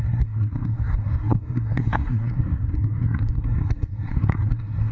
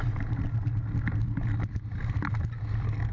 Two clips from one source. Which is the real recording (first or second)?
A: second